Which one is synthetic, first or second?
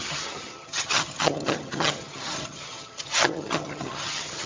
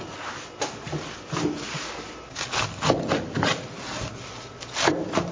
first